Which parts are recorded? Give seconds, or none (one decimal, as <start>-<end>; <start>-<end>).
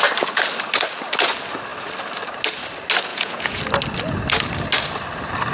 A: 0.0-3.1; 3.6-5.5